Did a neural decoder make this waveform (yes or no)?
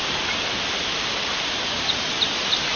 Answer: no